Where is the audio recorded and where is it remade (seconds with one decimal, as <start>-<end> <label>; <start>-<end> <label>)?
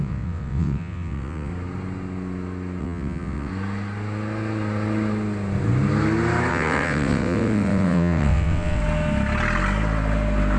0.0-1.5 remade; 1.5-2.8 recorded; 2.8-3.5 remade; 3.5-6.5 recorded; 6.5-8.8 remade; 8.8-10.6 recorded